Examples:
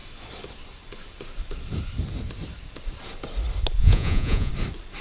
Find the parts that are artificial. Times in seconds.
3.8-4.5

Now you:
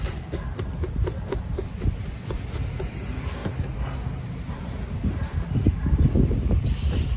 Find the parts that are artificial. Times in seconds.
none

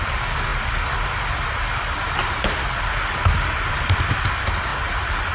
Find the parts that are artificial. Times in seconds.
none

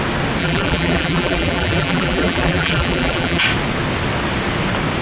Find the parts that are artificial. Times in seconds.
0.4-3.4

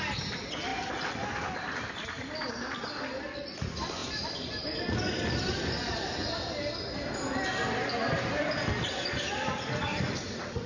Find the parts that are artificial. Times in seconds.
4.0-4.8

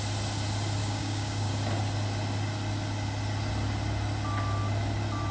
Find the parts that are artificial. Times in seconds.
0.8-1.5

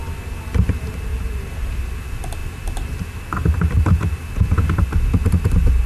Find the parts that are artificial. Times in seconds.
none